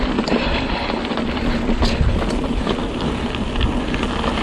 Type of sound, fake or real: real